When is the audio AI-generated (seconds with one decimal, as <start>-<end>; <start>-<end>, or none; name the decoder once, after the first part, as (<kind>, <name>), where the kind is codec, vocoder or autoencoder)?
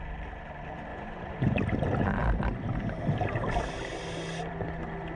0.9-1.6 (vocoder, Vocos)